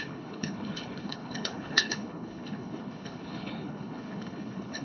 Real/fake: fake